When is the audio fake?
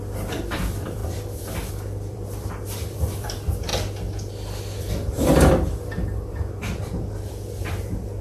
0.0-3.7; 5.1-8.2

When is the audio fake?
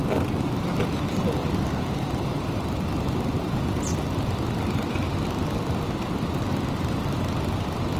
1.4-2.3; 3.9-6.5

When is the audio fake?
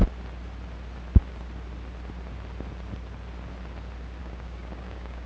4.2-5.3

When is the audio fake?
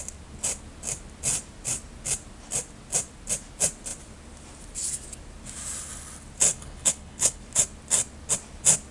6.5-7.4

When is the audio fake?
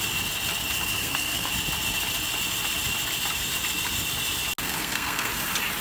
1.0-1.5; 4.6-5.3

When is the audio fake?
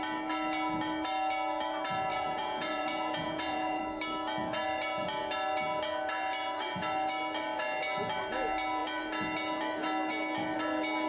2.1-3.8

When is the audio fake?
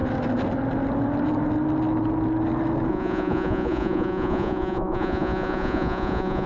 2.9-6.5